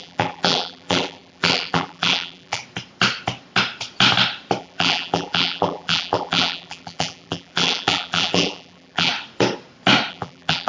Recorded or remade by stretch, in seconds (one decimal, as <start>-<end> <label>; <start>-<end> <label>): 0.0-2.6 remade; 2.6-4.6 recorded; 4.6-9.1 remade; 9.1-10.1 recorded; 10.1-10.7 remade